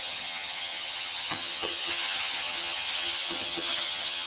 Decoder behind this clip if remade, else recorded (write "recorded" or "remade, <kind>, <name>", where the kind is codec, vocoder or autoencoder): remade, vocoder, HiFi-GAN